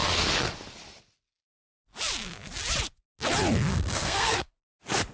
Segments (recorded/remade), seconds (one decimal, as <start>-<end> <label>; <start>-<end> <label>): 0.0-3.7 recorded; 3.7-4.5 remade; 4.5-5.1 recorded